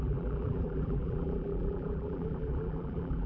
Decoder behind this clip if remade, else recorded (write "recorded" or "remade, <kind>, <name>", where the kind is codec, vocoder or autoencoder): remade, vocoder, BigVGAN v2